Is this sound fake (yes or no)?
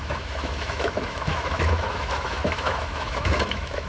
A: yes